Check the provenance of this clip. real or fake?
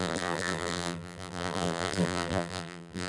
fake